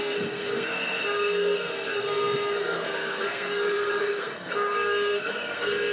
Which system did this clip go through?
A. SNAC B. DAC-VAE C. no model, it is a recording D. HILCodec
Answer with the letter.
A